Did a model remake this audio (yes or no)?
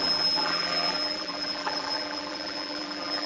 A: yes